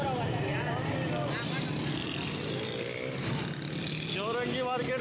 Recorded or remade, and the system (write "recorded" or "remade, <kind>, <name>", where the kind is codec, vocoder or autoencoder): recorded